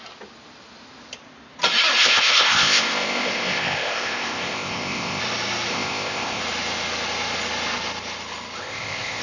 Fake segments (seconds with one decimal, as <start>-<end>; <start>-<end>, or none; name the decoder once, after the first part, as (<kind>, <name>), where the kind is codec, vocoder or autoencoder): 2.0-5.2 (codec, ZipCodec); 5.7-6.4; 8.6-9.2